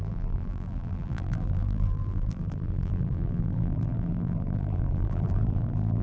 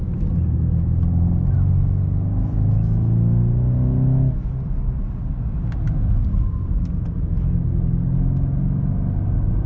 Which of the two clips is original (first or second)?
second